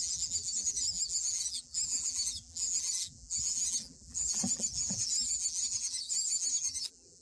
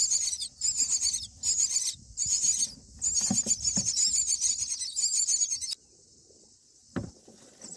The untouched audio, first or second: second